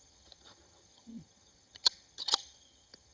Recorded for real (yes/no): no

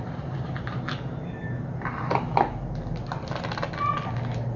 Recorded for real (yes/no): yes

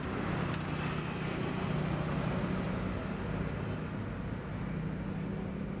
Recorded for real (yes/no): yes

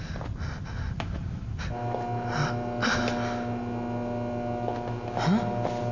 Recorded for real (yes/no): yes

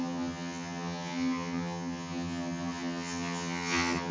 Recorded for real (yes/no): no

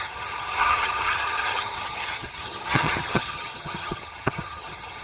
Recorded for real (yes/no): no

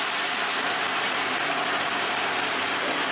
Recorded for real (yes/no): yes